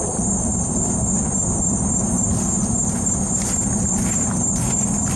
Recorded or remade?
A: recorded